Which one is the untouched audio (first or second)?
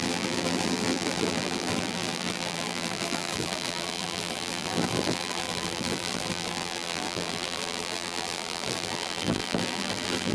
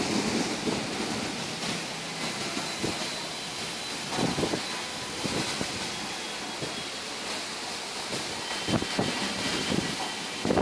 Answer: second